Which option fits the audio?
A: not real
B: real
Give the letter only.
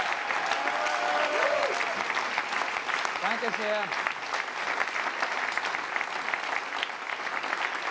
B